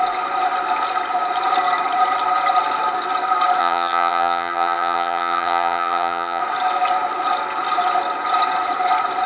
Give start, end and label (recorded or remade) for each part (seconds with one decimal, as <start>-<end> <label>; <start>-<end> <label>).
0.0-3.6 recorded; 3.6-6.4 remade; 6.4-9.3 recorded